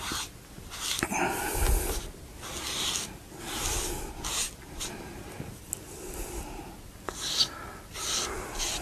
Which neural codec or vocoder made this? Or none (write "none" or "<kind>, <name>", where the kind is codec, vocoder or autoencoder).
none